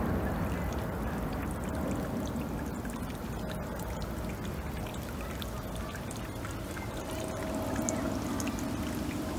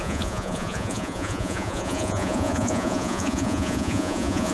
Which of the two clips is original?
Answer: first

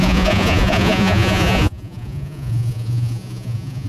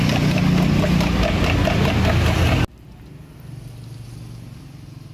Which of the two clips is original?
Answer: second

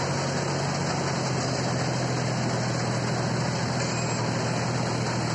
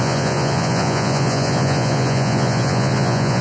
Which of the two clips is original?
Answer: first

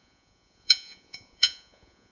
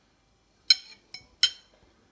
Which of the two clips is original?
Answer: second